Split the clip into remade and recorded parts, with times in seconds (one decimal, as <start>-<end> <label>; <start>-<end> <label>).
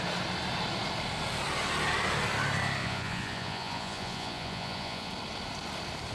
0.0-2.8 recorded; 2.8-5.1 remade; 5.1-6.1 recorded